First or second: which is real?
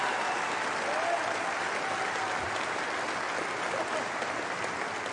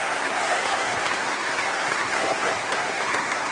first